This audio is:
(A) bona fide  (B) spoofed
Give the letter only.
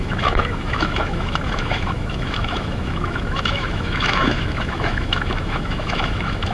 B